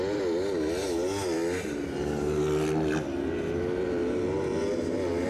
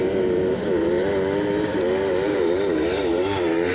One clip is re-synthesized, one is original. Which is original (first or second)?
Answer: first